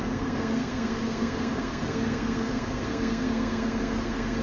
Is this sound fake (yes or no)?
yes